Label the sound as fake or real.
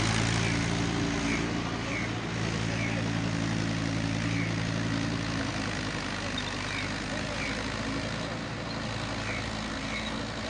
real